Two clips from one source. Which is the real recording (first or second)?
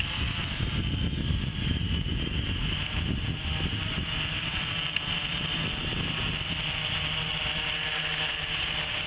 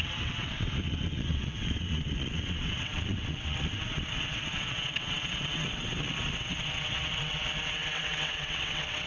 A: first